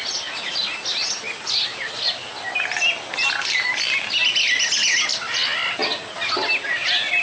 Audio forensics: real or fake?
real